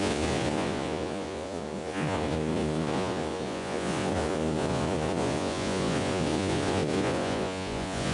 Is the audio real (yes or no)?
no